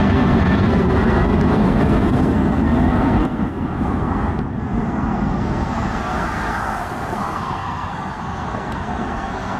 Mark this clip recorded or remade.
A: remade